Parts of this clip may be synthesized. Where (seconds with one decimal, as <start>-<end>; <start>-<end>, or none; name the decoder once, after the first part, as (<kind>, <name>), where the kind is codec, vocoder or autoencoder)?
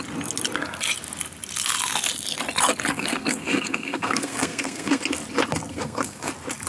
2.9-5.0 (codec, SNAC); 5.7-6.3